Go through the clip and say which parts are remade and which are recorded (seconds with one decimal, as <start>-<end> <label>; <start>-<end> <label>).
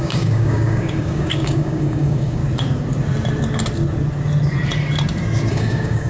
0.0-2.4 remade; 2.4-5.5 recorded; 5.5-6.1 remade